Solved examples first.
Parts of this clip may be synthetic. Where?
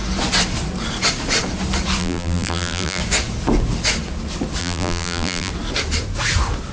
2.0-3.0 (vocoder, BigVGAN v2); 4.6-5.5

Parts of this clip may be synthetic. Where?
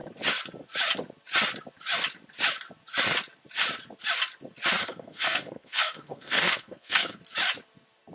4.8-7.2 (codec, SNAC)